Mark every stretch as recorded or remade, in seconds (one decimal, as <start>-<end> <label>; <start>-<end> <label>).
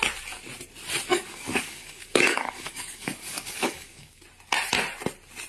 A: 0.0-1.1 recorded; 1.1-4.2 remade; 4.2-5.5 recorded